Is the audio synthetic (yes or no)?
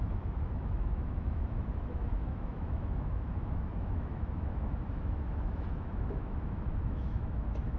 yes